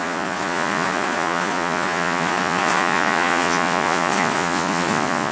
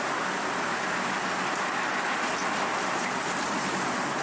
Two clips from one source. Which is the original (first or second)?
second